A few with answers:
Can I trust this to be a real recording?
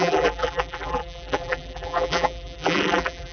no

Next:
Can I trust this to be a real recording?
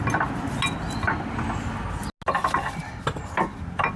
yes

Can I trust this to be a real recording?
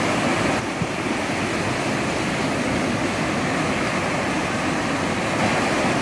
yes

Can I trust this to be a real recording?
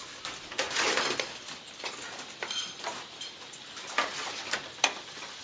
yes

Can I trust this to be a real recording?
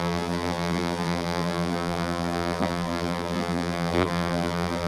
no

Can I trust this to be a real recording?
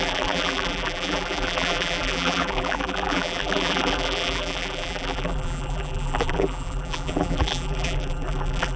no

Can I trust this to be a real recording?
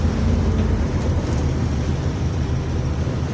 no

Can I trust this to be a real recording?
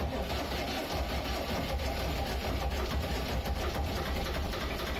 yes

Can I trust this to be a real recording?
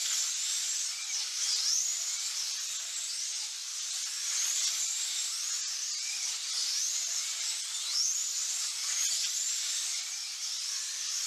yes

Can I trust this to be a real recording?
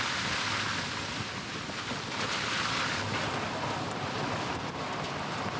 no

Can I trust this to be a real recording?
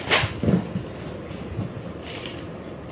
yes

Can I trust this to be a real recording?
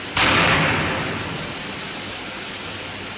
yes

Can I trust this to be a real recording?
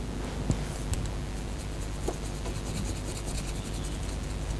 yes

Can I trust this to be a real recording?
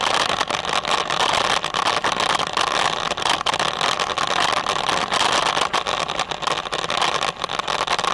yes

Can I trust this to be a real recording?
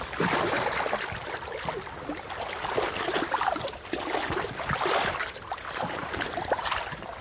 yes